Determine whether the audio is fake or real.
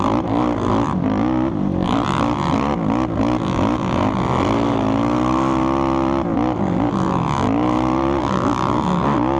real